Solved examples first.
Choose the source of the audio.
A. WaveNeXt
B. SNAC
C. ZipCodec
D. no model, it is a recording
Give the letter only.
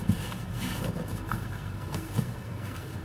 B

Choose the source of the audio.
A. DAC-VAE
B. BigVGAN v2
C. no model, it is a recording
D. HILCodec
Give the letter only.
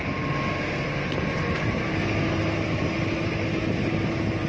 C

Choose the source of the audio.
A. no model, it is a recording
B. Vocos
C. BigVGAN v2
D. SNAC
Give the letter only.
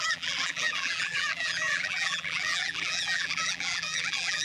C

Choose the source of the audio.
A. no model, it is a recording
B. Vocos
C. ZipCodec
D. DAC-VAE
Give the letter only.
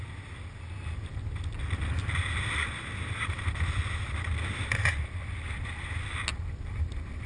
A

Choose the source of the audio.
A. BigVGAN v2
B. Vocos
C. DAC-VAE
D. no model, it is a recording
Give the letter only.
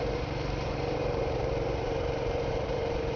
A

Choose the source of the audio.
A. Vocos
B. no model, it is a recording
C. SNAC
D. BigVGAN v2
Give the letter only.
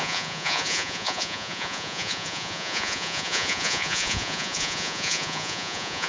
A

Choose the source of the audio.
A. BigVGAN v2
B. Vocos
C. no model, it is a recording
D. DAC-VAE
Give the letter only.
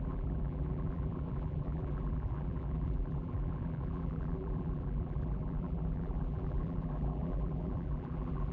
A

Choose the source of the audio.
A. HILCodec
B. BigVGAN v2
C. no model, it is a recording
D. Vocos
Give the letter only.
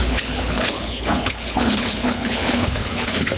A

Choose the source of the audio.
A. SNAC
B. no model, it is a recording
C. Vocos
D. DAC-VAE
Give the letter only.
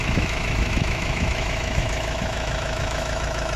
D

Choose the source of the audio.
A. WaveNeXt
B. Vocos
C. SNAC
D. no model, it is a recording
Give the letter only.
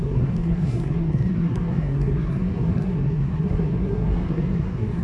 C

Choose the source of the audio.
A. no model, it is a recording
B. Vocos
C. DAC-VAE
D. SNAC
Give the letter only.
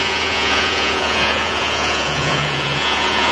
B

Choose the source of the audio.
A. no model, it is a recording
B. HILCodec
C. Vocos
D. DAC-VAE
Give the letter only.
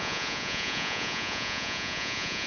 C